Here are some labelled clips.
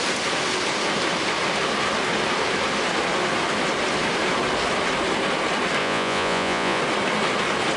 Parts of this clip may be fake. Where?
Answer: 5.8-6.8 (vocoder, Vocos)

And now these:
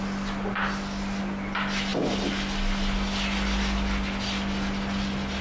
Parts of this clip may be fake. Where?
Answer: none

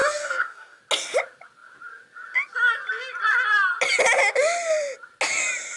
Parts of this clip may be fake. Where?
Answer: 0.0-0.8 (codec, DAC)

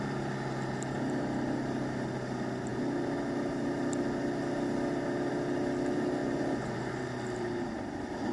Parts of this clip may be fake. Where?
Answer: 6.2-7.0 (vocoder, Vocos)